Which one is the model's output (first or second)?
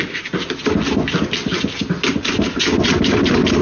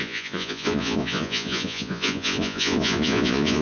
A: second